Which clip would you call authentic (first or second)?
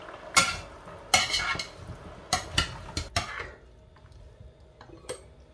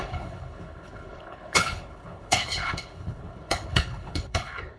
first